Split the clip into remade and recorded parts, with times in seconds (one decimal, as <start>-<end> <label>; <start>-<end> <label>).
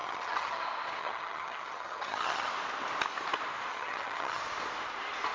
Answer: 0.0-0.6 remade; 0.6-1.0 recorded; 1.0-2.5 remade; 2.5-3.7 recorded; 3.7-4.4 remade; 4.4-5.3 recorded